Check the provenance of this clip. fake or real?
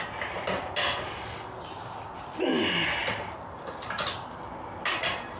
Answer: real